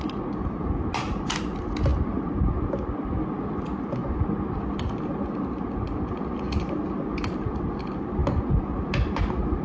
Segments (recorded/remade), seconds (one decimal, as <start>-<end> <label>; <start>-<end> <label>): 0.0-9.6 recorded